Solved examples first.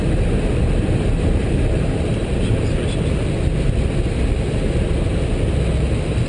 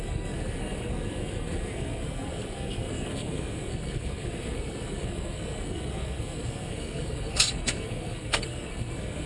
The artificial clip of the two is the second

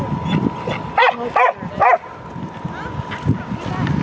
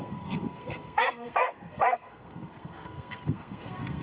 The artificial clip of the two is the second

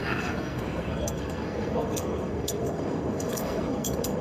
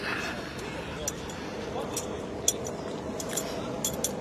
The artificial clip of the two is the first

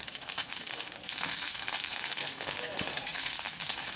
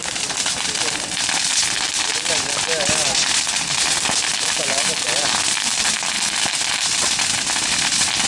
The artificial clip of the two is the first